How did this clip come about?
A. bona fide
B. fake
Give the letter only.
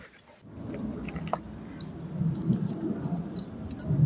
A